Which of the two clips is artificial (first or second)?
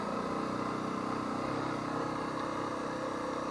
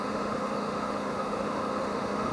second